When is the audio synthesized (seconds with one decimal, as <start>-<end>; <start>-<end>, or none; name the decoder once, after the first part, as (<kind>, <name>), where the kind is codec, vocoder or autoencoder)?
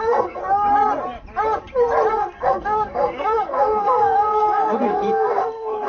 0.0-0.4 (codec, SNAC); 2.1-5.9